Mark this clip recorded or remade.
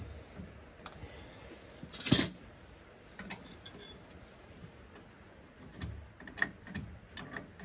recorded